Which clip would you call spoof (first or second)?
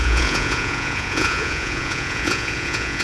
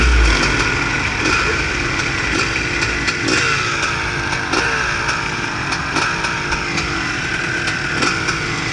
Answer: first